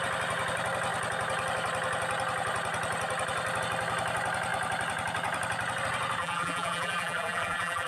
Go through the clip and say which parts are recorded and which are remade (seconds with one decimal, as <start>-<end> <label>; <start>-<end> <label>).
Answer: 0.0-6.2 recorded; 6.2-7.9 remade